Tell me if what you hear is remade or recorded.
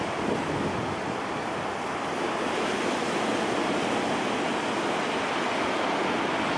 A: recorded